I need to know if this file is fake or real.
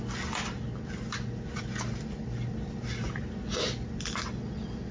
real